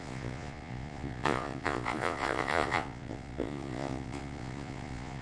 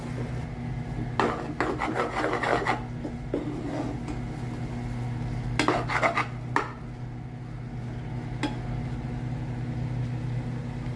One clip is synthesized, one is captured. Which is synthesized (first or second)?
first